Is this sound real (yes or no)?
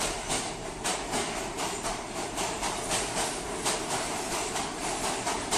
no